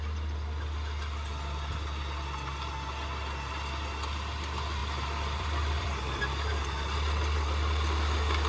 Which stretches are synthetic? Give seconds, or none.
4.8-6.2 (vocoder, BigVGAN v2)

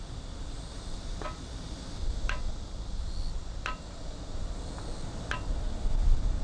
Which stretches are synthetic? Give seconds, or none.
3.4-4.0 (vocoder, BigVGAN v2)

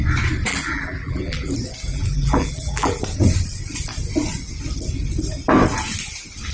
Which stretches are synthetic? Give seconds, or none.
0.5-1.5 (vocoder, BigVGAN v2); 1.9-3.0

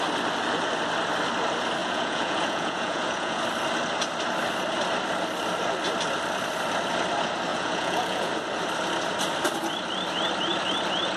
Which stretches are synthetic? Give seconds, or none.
1.8-3.4 (vocoder, Vocos); 7.5-8.3